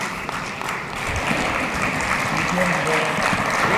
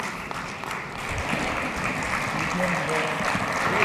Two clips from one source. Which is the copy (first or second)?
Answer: first